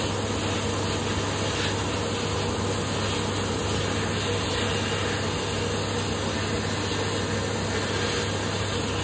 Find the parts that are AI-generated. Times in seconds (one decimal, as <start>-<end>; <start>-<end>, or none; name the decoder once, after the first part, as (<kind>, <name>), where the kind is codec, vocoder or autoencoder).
none